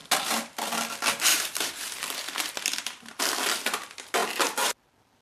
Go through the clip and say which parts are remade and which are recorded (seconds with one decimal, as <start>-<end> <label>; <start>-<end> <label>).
0.0-1.3 recorded; 1.3-3.2 remade; 3.2-5.2 recorded